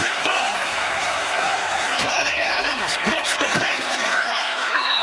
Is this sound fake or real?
fake